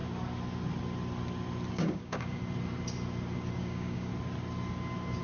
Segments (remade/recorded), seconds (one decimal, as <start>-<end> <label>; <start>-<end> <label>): 0.0-1.7 recorded; 1.7-2.4 remade; 2.4-3.6 recorded; 3.6-4.1 remade; 4.1-5.2 recorded